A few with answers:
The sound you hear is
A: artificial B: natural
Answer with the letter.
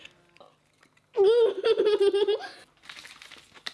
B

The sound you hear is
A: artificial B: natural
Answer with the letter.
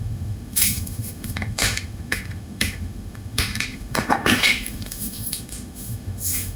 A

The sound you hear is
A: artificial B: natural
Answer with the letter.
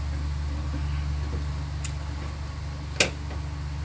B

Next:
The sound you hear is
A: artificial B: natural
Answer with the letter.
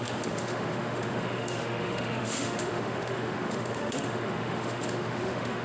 A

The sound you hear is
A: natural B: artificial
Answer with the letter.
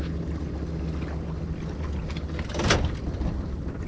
A